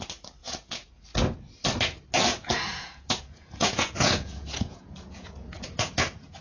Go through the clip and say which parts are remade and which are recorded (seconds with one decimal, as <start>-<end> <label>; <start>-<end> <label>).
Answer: 0.0-0.4 recorded; 0.4-0.9 remade; 0.9-2.3 recorded; 2.3-6.4 remade